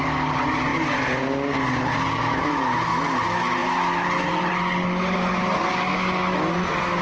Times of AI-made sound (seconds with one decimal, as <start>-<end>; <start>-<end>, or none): 2.2-3.0; 3.6-4.3; 5.9-7.0